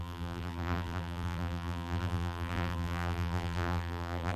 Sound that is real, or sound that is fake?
fake